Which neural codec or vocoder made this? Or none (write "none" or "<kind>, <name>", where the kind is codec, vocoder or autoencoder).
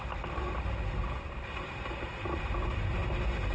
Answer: none